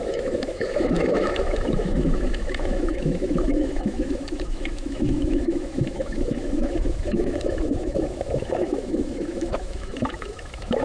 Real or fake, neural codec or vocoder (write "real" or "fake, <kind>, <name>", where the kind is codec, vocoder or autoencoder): fake, autoencoder, DAC-VAE